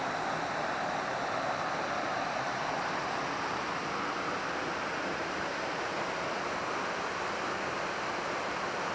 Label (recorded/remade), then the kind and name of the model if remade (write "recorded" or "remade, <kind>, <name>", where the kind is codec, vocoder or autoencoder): remade, vocoder, BigVGAN v2